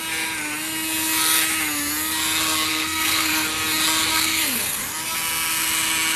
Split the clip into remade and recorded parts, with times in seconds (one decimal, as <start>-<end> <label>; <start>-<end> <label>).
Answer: 0.0-2.7 recorded; 2.7-3.3 remade; 3.3-4.1 recorded; 4.1-4.8 remade; 4.8-6.2 recorded